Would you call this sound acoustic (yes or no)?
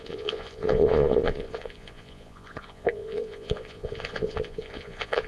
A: no